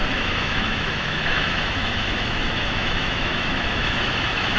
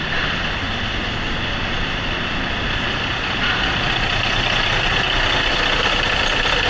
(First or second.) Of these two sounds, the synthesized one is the first